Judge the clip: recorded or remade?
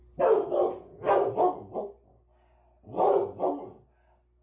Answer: recorded